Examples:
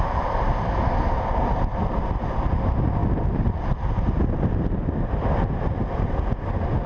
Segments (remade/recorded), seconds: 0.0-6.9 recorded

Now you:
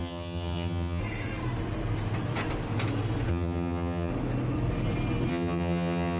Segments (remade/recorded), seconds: 0.0-1.0 remade; 1.0-3.3 recorded; 3.3-4.1 remade; 4.1-5.3 recorded; 5.3-6.2 remade

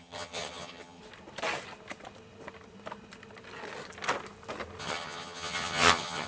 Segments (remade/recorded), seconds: 0.0-1.0 remade; 1.0-4.8 recorded; 4.8-6.3 remade

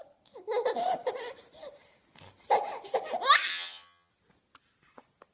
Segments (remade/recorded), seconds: 0.0-3.5 recorded; 3.5-4.1 remade; 4.1-5.3 recorded

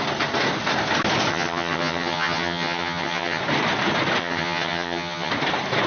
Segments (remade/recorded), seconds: 0.0-1.3 recorded; 1.3-3.4 remade; 3.4-4.2 recorded; 4.2-5.3 remade; 5.3-5.9 recorded

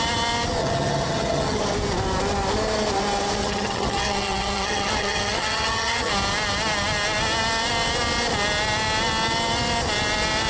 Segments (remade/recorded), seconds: 0.0-0.6 recorded; 0.6-1.6 remade; 1.6-3.4 recorded; 3.4-6.1 remade; 6.1-10.5 recorded